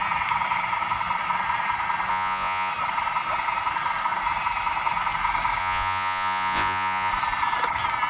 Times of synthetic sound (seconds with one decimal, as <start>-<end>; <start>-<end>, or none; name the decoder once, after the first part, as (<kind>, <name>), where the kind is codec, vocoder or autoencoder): 2.1-2.7 (vocoder, Vocos); 5.6-7.1